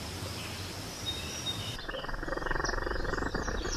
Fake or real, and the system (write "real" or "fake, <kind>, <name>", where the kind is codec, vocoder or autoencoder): fake, vocoder, BigVGAN v2